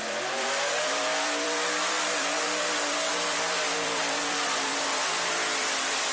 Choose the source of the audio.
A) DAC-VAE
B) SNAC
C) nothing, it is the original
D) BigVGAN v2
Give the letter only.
D